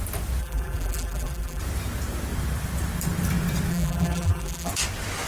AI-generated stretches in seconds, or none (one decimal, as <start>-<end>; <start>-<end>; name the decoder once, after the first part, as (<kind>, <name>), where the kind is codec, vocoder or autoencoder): 0.4-1.6 (vocoder, BigVGAN v2); 3.7-4.7